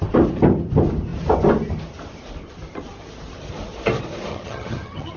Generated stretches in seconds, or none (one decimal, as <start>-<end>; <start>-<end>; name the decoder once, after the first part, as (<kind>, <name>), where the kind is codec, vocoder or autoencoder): 4.3-5.2 (vocoder, HiFi-GAN)